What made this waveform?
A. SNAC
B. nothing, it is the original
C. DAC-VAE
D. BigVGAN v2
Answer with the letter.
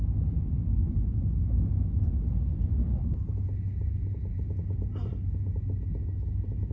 B